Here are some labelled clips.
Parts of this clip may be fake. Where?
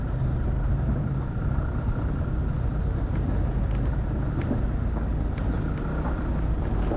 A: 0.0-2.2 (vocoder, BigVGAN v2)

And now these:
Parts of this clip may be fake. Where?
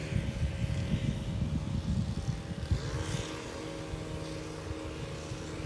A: none